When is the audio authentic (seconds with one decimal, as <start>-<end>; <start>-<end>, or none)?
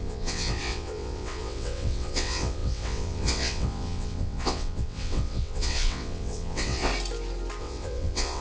6.9-7.6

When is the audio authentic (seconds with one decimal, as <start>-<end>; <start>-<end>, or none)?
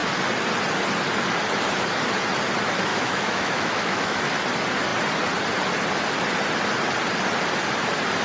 0.0-2.9; 4.2-8.2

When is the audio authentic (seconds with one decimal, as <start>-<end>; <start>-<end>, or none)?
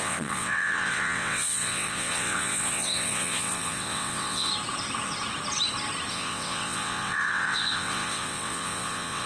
4.5-6.1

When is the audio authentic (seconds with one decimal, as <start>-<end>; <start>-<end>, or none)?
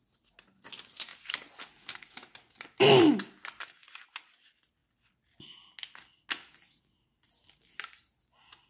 0.0-8.7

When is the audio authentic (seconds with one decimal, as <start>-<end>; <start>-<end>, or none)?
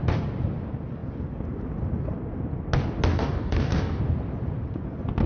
0.0-3.1; 4.0-5.3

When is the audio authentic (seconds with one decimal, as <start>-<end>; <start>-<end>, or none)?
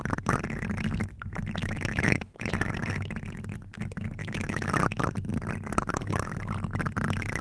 0.0-1.6; 2.5-4.2; 4.7-7.4